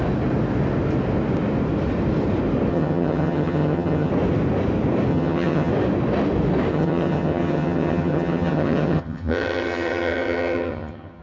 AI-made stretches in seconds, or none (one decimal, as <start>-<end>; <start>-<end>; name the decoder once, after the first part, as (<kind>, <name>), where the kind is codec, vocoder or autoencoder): 2.7-4.1 (vocoder, HiFi-GAN); 5.1-5.7; 6.7-11.2